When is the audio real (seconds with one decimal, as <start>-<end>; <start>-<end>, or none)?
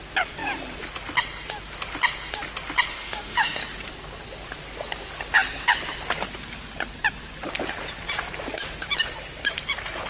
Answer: 0.0-2.9; 3.6-10.1